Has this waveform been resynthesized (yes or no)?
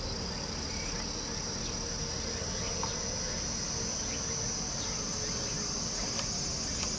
no